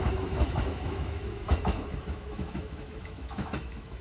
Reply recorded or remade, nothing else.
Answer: remade